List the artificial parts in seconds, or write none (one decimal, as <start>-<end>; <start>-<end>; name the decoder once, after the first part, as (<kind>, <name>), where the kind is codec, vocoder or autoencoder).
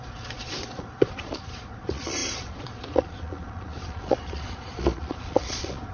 0.0-5.9 (vocoder, Vocos)